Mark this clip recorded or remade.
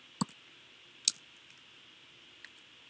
recorded